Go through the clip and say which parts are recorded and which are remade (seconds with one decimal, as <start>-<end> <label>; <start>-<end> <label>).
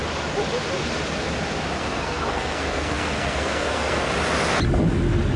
0.0-1.8 recorded; 1.8-4.1 remade; 4.1-5.4 recorded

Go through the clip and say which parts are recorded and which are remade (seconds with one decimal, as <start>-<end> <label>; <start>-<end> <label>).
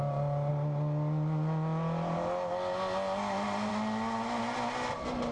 0.0-5.3 recorded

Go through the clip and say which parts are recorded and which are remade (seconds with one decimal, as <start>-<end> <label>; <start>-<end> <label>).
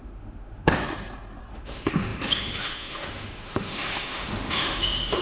0.0-0.8 remade; 0.8-1.5 recorded; 1.5-5.2 remade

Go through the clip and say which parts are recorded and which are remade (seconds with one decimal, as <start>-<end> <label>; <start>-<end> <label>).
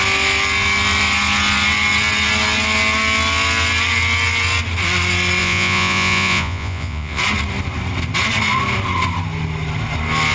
0.0-5.4 recorded; 5.4-7.2 remade; 7.2-10.3 recorded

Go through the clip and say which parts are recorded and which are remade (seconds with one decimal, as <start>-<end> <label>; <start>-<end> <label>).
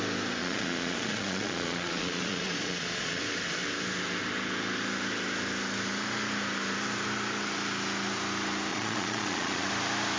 0.0-0.4 recorded; 0.4-3.2 remade; 3.2-8.7 recorded; 8.7-9.7 remade; 9.7-10.2 recorded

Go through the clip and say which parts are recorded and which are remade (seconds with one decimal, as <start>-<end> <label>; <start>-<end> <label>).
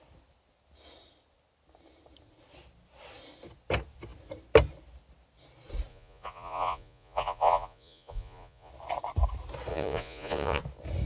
0.0-5.9 recorded; 5.9-8.7 remade; 8.7-9.7 recorded; 9.7-10.6 remade; 10.6-11.1 recorded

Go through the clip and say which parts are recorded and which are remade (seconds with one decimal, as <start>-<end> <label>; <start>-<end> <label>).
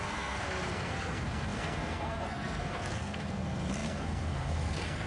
0.0-5.1 remade